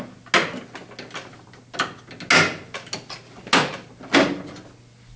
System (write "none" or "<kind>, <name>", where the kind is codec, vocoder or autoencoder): none